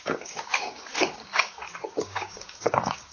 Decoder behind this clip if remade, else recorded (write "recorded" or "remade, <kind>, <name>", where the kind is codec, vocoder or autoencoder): remade, codec, DAC